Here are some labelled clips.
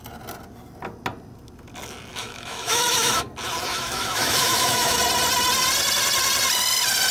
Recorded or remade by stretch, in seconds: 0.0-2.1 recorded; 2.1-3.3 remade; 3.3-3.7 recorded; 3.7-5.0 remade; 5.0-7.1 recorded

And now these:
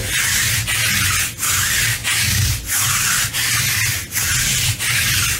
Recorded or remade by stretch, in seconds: 0.0-5.4 recorded

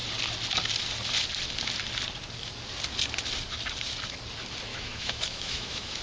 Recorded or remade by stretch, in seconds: 0.0-4.7 recorded; 4.7-6.0 remade

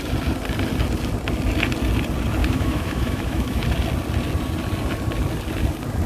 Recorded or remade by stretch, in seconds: 0.0-2.4 recorded; 2.4-3.6 remade; 3.6-6.1 recorded